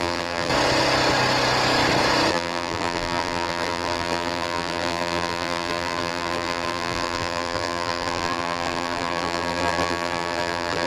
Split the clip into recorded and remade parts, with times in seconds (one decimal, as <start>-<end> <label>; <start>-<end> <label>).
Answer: 0.0-0.5 remade; 0.5-2.3 recorded; 2.3-10.9 remade